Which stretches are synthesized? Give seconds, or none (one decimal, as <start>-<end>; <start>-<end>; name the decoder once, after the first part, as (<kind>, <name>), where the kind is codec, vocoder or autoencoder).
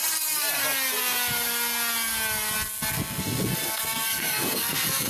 2.9-5.1 (codec, SNAC)